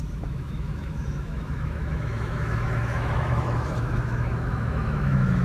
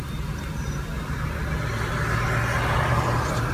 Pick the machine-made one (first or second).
first